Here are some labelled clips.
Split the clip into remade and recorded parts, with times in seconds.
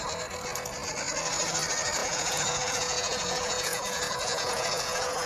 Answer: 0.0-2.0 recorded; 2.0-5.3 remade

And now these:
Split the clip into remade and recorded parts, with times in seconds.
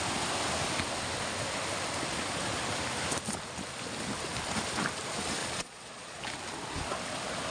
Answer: 0.0-5.4 recorded; 5.4-6.2 remade; 6.2-7.5 recorded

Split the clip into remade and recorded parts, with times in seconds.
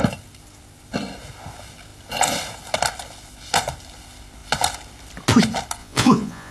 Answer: 0.0-5.8 recorded; 5.8-6.5 remade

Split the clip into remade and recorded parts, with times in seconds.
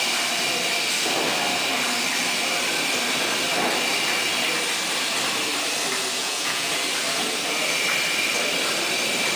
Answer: 0.0-6.2 recorded; 6.2-6.7 remade; 6.7-9.4 recorded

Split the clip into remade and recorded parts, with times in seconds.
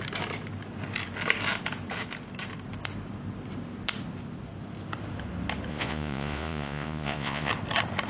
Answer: 0.0-5.7 recorded; 5.7-7.5 remade; 7.5-8.1 recorded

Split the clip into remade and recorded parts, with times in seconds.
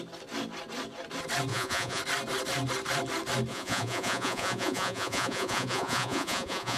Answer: 0.0-1.5 recorded; 1.5-2.0 remade; 2.0-3.5 recorded; 3.5-6.8 remade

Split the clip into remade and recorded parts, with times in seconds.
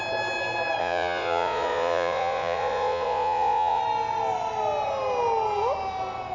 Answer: 0.0-0.8 recorded; 0.8-3.8 remade; 3.8-6.3 recorded